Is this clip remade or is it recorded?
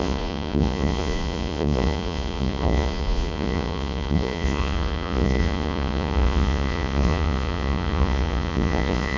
remade